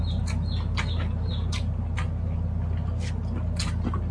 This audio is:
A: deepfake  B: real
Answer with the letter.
B